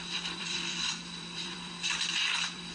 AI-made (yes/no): yes